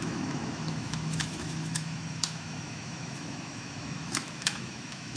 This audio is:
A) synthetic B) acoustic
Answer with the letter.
A